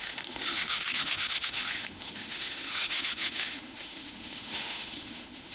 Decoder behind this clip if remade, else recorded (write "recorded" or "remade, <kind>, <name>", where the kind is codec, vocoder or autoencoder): remade, autoencoder, DAC-VAE